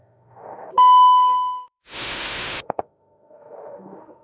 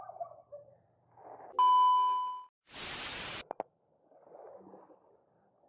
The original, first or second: second